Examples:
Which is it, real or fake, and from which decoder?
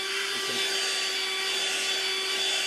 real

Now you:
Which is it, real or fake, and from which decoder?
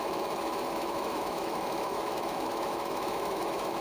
fake, autoencoder, DAC-VAE